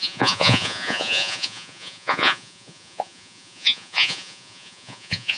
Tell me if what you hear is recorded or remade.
remade